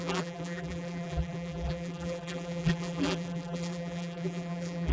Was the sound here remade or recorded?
remade